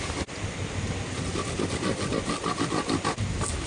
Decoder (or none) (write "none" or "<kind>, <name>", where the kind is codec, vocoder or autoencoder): none